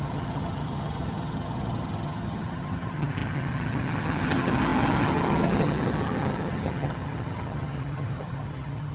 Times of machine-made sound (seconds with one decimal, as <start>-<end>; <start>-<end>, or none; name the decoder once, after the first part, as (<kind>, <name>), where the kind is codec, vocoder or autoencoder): 0.0-8.9 (vocoder, HiFi-GAN)